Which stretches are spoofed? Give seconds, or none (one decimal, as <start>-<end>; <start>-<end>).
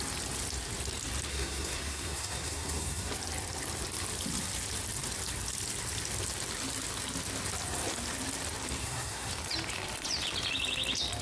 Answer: 1.3-3.1; 8.8-9.3